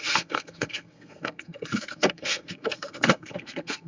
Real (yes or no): no